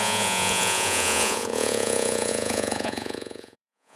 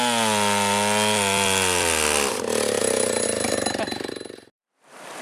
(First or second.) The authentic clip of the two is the second